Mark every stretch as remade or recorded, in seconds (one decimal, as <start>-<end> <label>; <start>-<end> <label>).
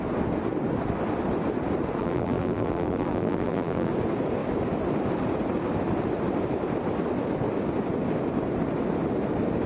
0.0-2.0 recorded; 2.0-3.9 remade; 3.9-9.7 recorded